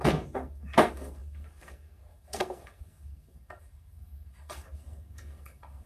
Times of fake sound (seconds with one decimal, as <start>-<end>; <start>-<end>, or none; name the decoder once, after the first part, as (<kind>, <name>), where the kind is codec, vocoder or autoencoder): 0.0-5.9 (codec, SNAC)